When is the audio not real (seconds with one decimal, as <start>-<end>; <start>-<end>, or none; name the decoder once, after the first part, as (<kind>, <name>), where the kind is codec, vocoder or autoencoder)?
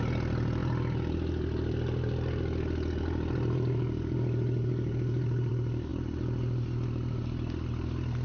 none